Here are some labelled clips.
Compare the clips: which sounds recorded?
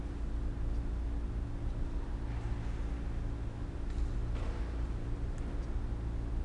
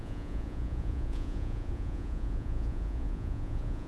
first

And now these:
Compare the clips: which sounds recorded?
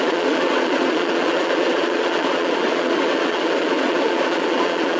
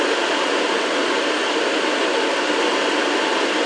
second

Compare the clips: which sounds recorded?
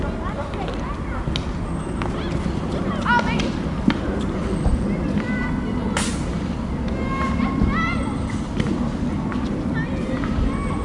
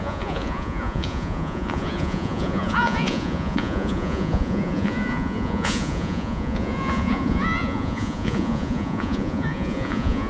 first